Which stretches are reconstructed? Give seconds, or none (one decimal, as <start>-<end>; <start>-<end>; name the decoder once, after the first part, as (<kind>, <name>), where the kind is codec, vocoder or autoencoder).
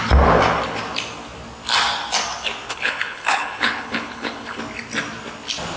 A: 2.7-4.6 (codec, HILCodec)